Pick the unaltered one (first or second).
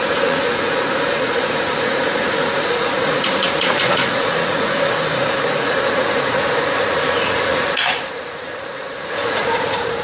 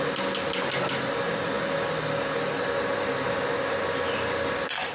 second